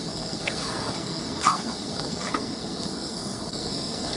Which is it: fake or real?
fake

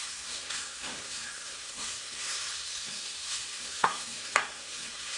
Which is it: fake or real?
fake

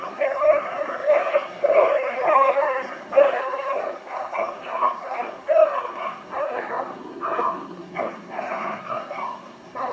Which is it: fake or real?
fake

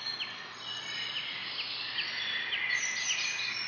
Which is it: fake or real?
real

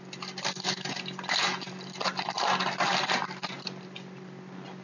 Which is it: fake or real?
real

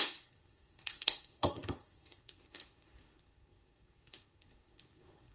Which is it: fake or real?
fake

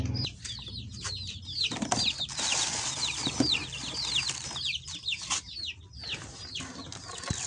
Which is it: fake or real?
real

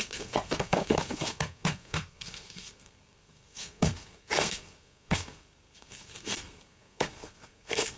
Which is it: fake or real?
fake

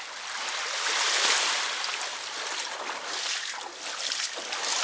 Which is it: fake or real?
real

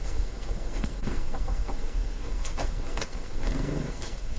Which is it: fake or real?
fake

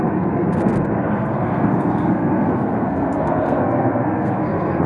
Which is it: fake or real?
fake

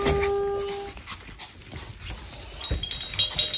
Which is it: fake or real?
real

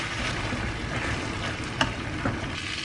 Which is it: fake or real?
real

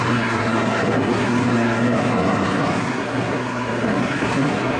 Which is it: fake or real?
fake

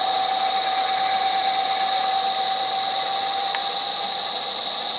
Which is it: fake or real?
real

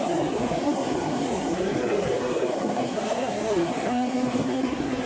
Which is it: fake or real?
fake